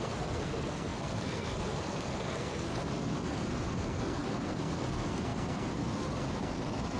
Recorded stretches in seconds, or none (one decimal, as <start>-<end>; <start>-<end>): none